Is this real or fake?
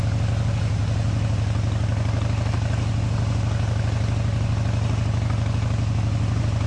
real